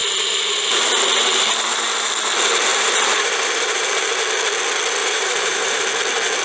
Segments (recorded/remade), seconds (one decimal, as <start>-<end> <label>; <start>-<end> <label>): 0.0-1.0 remade; 1.0-2.7 recorded; 2.7-4.1 remade; 4.1-5.0 recorded; 5.0-5.8 remade; 5.8-6.4 recorded

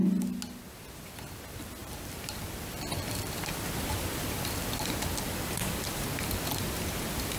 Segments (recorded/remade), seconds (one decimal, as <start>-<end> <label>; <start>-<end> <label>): 0.0-1.8 recorded; 1.8-6.2 remade; 6.2-7.4 recorded

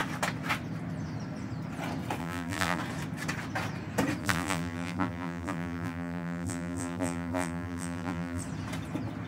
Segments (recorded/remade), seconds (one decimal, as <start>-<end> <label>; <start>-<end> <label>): 0.0-2.2 recorded; 2.2-2.8 remade; 2.8-4.2 recorded; 4.2-8.4 remade; 8.4-9.3 recorded

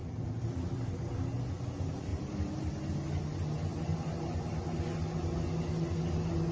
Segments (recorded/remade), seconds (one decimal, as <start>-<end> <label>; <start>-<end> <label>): 0.0-0.9 remade; 0.9-2.1 recorded; 2.1-2.8 remade; 2.8-3.7 recorded; 3.7-4.6 remade; 4.6-6.5 recorded

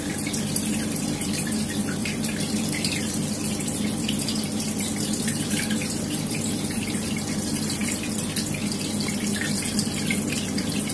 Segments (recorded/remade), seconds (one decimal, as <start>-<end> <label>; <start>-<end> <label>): 0.0-7.8 remade; 7.8-10.9 recorded

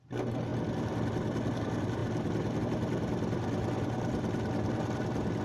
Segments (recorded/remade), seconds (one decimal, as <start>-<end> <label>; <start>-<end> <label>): 0.0-5.4 recorded